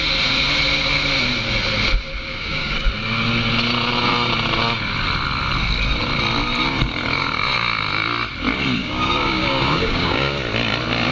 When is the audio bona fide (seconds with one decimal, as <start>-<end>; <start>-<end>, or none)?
0.0-2.3; 2.9-8.8; 10.4-11.1